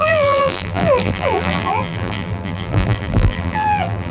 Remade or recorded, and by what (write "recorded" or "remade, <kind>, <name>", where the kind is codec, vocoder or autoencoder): remade, vocoder, BigVGAN v2